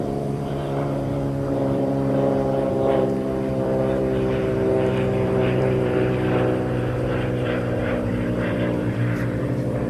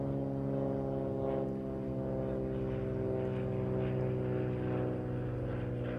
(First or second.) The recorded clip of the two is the second